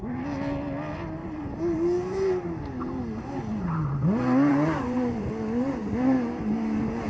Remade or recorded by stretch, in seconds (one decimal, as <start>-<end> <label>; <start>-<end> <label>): 0.0-1.2 recorded; 1.2-2.6 remade; 2.6-4.5 recorded; 4.5-5.3 remade; 5.3-7.1 recorded